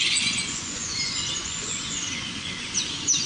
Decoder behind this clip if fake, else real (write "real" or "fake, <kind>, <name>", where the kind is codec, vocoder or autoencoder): fake, vocoder, Vocos